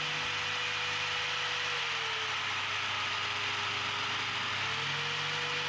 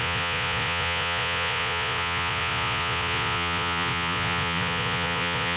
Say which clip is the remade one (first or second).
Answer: second